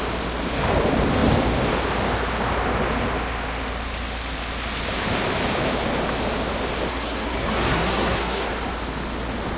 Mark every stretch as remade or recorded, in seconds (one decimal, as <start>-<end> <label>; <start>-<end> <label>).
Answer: 0.0-6.9 recorded; 6.9-8.5 remade; 8.5-9.6 recorded